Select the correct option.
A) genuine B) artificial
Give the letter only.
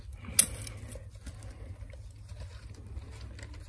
A